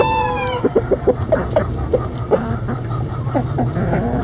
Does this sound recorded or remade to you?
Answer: remade